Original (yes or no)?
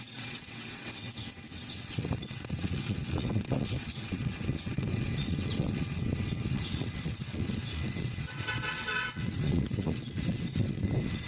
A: no